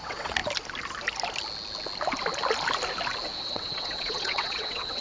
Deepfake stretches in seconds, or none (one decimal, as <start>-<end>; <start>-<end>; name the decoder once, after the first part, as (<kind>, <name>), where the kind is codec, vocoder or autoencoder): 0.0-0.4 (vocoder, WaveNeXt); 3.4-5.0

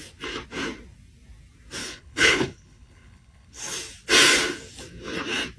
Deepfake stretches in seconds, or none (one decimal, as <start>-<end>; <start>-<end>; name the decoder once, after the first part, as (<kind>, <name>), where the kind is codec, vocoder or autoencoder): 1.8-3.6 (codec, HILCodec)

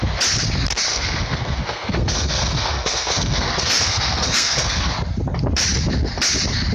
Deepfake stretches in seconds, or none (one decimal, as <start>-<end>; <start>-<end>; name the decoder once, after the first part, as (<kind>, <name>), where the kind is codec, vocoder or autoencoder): 0.9-4.9 (codec, SNAC)

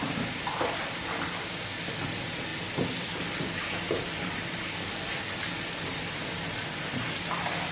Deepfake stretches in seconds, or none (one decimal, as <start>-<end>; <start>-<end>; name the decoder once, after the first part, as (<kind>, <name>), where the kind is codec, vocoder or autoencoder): none

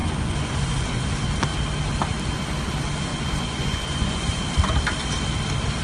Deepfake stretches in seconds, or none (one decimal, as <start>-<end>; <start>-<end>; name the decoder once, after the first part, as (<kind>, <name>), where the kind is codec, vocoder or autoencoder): 0.0-1.0 (vocoder, Vocos); 3.1-4.4